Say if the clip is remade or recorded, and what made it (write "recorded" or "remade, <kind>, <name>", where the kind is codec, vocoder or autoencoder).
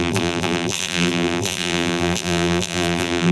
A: remade, vocoder, BigVGAN v2